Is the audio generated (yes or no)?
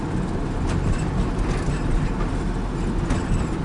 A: no